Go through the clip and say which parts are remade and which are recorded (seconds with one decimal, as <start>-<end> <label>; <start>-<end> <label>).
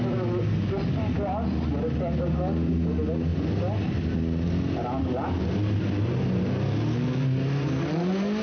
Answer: 0.0-8.4 recorded